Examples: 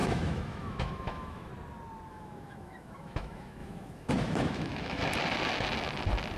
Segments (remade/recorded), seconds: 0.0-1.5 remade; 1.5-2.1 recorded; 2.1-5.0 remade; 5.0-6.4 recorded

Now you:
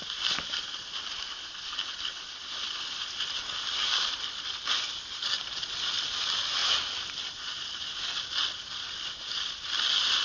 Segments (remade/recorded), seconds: 0.0-10.2 recorded

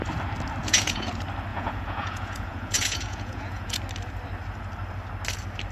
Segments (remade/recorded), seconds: 0.0-0.6 recorded; 0.6-1.1 remade; 1.1-1.5 recorded; 1.5-3.8 remade; 3.8-5.7 recorded

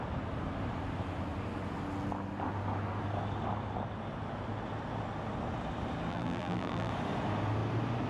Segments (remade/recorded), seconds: 0.0-6.1 recorded; 6.1-6.9 remade; 6.9-8.1 recorded

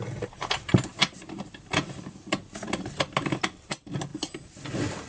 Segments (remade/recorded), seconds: 0.0-5.1 recorded

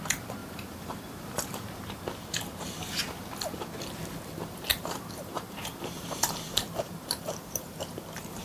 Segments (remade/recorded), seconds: 0.0-0.4 recorded; 0.4-1.5 remade; 1.5-4.7 recorded; 4.7-8.4 remade

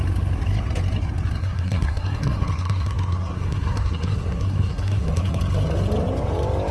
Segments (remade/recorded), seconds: 0.0-1.4 recorded; 1.4-5.4 remade; 5.4-6.7 recorded